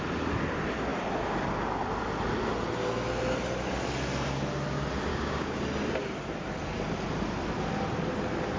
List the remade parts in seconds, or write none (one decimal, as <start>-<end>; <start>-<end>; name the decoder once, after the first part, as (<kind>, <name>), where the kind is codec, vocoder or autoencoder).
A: 5.1-5.6 (codec, DAC)